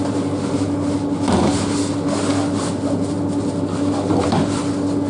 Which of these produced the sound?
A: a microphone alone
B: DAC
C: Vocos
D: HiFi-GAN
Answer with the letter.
A